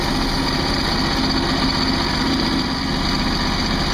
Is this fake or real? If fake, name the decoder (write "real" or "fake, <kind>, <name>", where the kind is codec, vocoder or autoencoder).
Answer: real